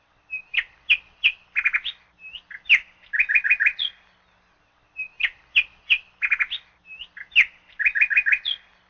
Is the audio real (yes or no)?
yes